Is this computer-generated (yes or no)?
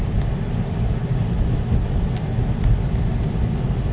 no